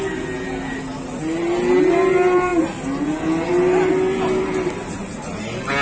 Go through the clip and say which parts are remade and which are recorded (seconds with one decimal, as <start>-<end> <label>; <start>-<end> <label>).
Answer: 0.0-5.8 recorded